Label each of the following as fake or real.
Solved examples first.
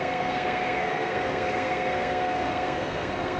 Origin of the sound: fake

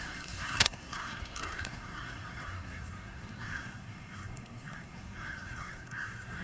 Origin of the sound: fake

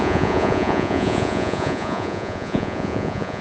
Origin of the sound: fake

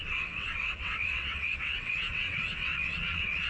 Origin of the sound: fake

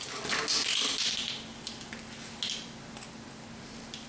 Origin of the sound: real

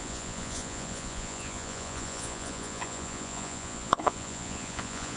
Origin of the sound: fake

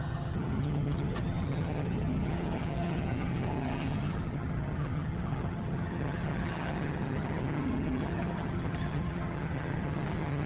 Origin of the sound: fake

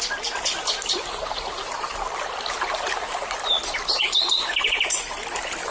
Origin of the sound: real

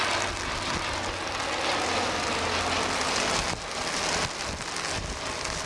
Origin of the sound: real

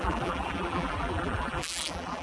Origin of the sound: fake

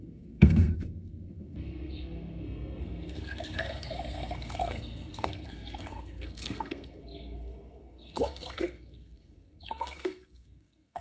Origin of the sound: fake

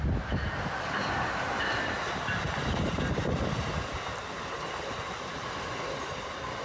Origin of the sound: real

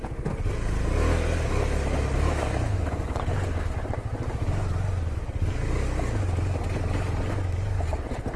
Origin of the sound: real